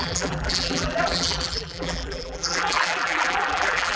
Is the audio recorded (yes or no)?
no